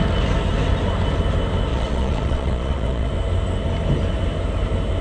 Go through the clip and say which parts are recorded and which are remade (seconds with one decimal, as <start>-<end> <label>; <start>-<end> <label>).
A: 0.0-1.7 recorded; 1.7-3.1 remade; 3.1-5.0 recorded